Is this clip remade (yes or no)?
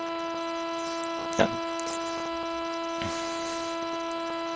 no